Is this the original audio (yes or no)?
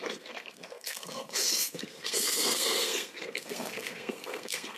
no